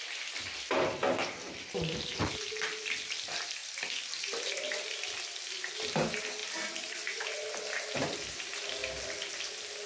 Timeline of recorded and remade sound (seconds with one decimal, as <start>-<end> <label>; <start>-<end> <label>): 0.0-9.9 recorded